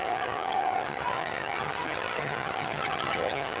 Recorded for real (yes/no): no